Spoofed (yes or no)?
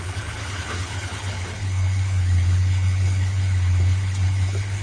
yes